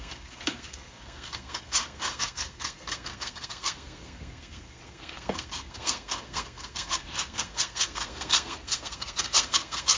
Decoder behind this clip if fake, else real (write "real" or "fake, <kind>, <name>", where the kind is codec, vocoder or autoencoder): fake, codec, SNAC